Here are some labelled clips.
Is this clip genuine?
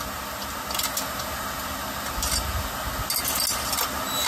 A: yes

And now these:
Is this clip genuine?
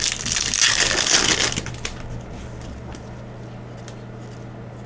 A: yes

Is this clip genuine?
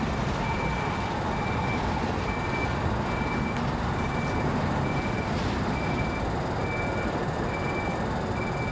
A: yes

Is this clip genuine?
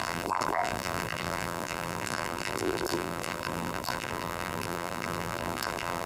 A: no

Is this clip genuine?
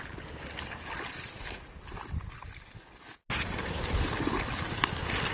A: yes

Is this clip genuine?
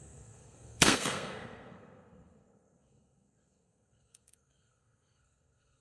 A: no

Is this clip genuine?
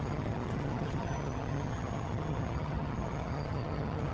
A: no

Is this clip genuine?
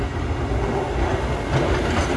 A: yes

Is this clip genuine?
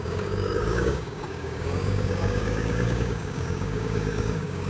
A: no